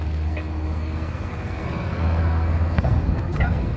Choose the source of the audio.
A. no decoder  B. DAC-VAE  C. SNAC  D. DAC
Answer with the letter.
C